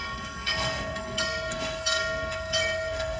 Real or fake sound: fake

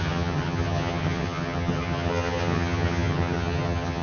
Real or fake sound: fake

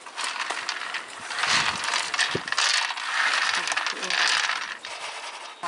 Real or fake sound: real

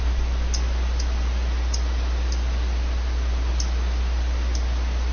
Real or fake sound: real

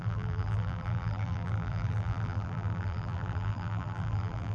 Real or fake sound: fake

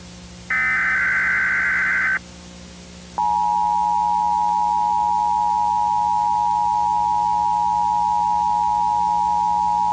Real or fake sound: real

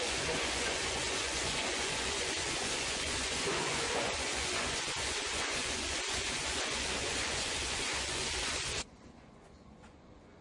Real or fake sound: fake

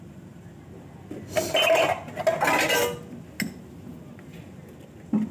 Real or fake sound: real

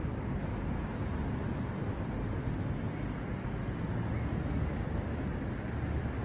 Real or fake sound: real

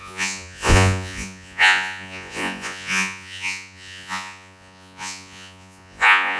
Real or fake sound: fake